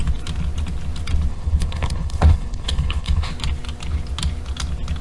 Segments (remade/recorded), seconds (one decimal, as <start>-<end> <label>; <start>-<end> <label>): 0.0-1.3 recorded; 1.3-3.3 remade; 3.3-5.0 recorded